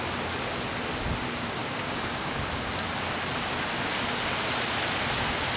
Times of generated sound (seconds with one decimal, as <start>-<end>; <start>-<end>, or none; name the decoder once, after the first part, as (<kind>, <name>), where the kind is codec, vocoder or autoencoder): 1.6-2.4 (codec, DAC)